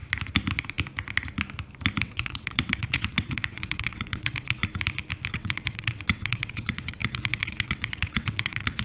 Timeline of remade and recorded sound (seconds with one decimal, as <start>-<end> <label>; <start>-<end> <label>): 0.0-2.0 recorded; 2.0-4.6 remade; 4.6-5.3 recorded; 5.3-8.8 remade